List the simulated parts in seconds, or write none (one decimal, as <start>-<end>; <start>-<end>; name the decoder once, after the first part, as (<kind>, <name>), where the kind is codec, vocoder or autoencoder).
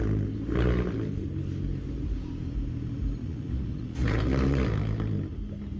3.2-4.2 (vocoder, Vocos)